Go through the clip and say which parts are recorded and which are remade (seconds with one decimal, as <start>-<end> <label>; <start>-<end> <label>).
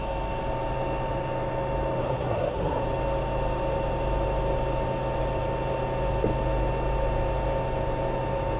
0.0-2.0 recorded; 2.0-2.8 remade; 2.8-8.6 recorded